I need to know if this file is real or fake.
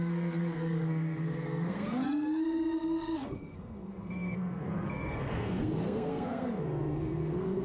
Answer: fake